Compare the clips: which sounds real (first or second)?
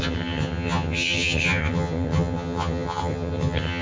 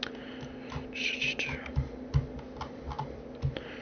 second